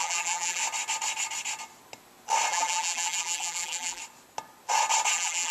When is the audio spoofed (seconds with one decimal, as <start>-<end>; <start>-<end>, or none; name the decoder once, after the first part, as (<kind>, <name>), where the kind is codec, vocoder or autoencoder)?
0.0-0.6 (vocoder, BigVGAN v2); 2.5-4.0; 5.1-5.5